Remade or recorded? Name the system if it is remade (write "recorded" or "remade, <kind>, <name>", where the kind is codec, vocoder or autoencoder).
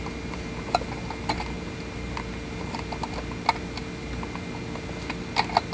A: recorded